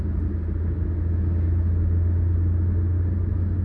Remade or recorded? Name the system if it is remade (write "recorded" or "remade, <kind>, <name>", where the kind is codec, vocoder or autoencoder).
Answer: recorded